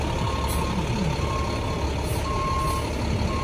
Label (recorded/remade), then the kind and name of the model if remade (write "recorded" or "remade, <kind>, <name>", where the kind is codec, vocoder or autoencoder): recorded